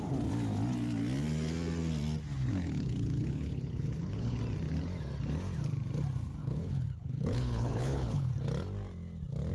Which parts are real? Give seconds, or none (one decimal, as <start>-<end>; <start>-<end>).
0.0-2.5; 4.4-6.4; 8.3-9.5